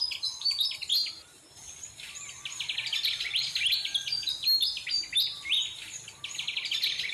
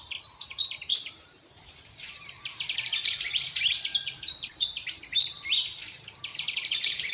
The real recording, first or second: first